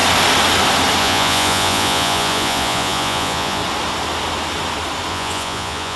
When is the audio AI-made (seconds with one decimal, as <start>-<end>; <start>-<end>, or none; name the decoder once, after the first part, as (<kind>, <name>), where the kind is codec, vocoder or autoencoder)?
1.0-3.6 (vocoder, Vocos); 5.1-6.0